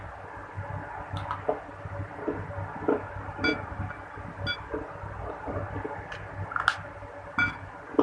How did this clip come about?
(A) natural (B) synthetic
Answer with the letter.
A